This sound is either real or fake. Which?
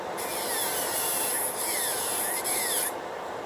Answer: fake